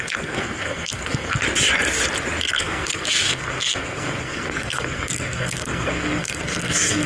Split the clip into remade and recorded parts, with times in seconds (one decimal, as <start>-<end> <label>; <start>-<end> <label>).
0.0-1.4 remade; 1.4-2.4 recorded; 2.4-7.1 remade